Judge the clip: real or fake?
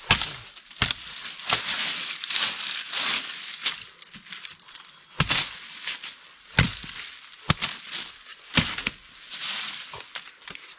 real